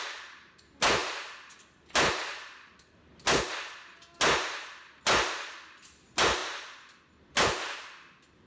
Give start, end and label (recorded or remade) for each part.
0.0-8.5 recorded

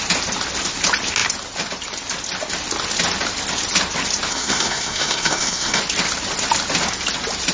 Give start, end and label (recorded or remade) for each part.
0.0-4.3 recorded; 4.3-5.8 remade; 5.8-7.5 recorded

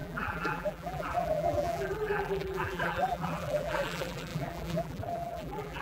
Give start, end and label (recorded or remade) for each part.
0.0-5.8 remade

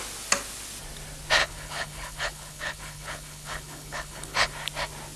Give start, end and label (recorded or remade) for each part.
0.0-1.4 recorded; 1.4-4.5 remade; 4.5-5.2 recorded

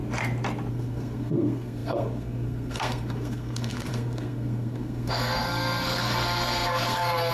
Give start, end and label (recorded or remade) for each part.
0.0-0.7 recorded; 0.7-7.3 remade

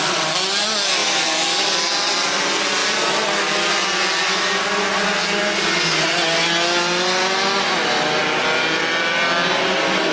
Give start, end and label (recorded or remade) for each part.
0.0-1.0 recorded; 1.0-1.8 remade; 1.8-10.1 recorded